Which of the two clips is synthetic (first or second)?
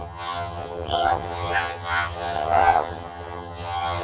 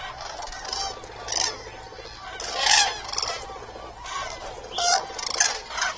first